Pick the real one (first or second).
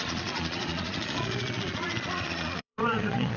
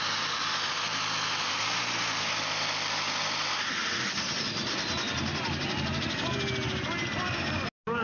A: second